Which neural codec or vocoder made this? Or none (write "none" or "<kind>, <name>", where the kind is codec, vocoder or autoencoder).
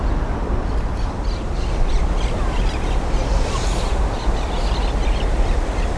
none